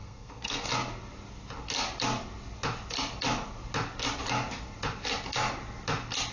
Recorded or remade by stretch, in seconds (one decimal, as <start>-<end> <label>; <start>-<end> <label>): 0.0-0.7 remade; 0.7-6.3 recorded